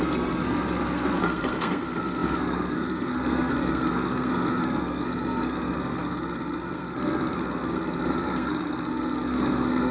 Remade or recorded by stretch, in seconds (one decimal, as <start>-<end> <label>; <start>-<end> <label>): 0.0-9.9 remade